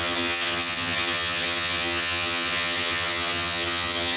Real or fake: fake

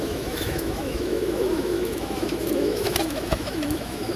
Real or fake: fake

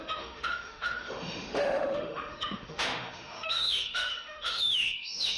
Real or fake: fake